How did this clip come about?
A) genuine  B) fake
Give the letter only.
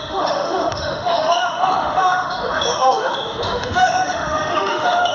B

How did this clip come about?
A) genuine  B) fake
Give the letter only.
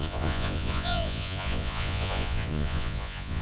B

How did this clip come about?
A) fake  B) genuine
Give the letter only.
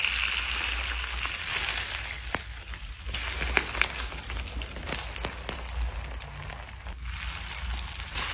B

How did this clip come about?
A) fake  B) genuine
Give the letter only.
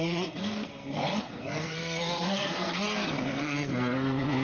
A